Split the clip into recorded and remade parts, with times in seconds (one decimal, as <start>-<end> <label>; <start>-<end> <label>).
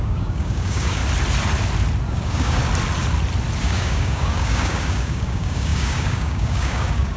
0.0-1.0 remade; 1.0-2.1 recorded; 2.1-2.7 remade; 2.7-3.6 recorded; 3.6-7.2 remade